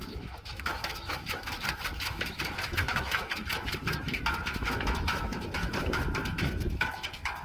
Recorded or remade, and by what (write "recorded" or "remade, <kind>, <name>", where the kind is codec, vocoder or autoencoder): remade, autoencoder, DAC-VAE